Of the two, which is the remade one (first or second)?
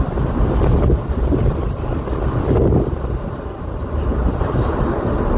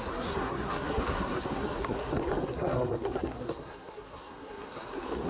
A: second